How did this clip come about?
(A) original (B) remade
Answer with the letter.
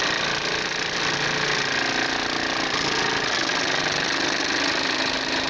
A